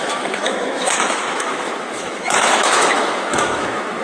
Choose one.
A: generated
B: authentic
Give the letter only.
A